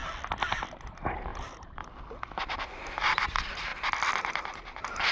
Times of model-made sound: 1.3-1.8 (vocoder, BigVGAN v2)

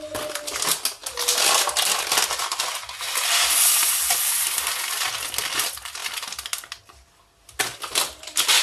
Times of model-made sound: none

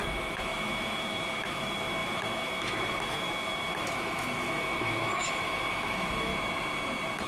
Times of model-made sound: 0.0-6.3 (autoencoder, DAC-VAE)

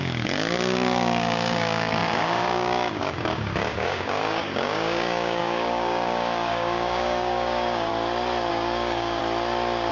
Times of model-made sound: 0.0-7.9 (codec, DAC); 8.5-9.2

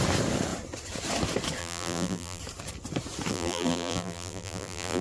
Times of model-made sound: 1.6-2.4 (vocoder, BigVGAN v2); 3.3-5.0

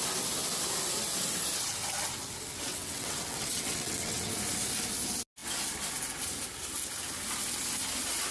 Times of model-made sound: 2.7-4.3 (vocoder, WaveNeXt)

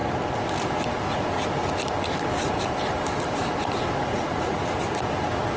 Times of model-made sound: 4.0-4.6 (vocoder, Vocos)